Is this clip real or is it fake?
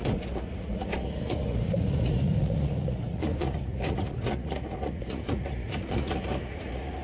fake